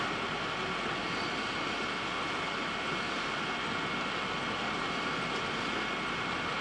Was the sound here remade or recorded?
recorded